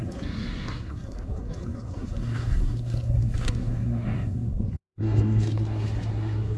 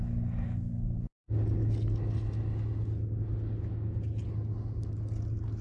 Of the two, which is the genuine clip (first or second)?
second